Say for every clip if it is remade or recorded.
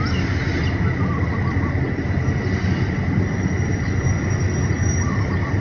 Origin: recorded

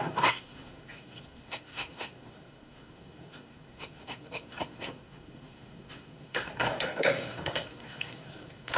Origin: remade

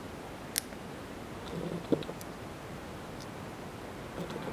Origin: recorded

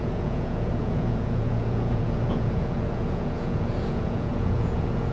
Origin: remade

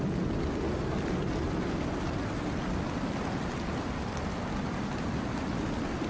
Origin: recorded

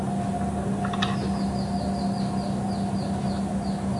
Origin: recorded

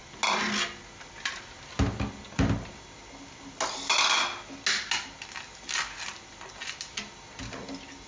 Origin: recorded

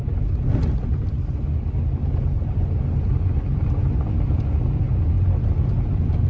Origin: recorded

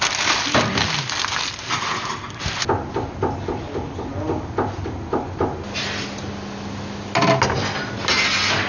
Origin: recorded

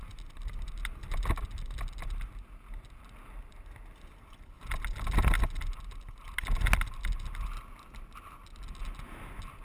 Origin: recorded